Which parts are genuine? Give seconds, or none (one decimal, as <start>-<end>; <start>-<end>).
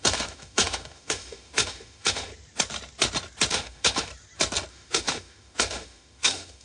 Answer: 2.3-3.5; 4.1-4.7